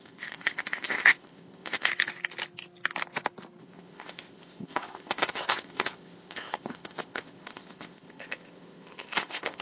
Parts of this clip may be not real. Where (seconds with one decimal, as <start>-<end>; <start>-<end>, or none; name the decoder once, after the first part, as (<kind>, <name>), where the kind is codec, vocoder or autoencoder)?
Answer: 0.0-1.9 (codec, ZipCodec); 3.6-9.6

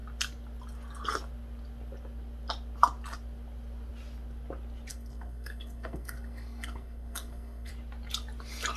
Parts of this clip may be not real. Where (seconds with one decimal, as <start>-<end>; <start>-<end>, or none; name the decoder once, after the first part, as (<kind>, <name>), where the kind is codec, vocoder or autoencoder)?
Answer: 4.9-7.7 (codec, SNAC)

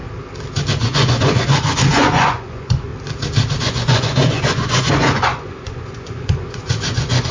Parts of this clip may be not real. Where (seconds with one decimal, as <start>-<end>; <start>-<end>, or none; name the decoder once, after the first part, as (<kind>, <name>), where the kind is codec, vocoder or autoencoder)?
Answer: 0.7-2.9 (vocoder, Vocos); 3.6-7.3

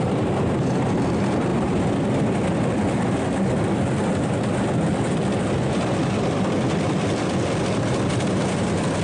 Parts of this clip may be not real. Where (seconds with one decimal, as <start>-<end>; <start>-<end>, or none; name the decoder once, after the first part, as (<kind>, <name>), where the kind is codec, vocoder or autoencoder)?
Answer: none

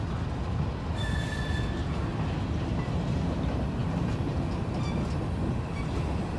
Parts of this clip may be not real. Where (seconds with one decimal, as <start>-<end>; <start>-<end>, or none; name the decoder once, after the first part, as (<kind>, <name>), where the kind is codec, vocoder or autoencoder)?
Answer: none

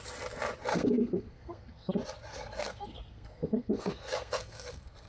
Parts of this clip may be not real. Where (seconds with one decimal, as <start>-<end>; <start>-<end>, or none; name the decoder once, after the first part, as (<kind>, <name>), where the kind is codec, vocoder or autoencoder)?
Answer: 0.7-1.9 (codec, SNAC); 2.3-5.1

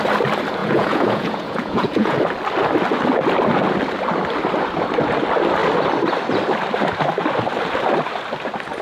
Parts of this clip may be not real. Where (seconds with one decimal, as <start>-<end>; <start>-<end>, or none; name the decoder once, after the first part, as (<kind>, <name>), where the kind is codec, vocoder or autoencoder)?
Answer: 0.6-2.2 (vocoder, Vocos)